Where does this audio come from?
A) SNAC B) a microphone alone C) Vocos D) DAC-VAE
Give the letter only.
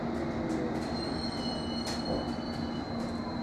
B